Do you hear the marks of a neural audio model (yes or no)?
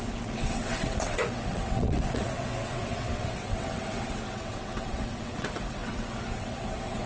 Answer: yes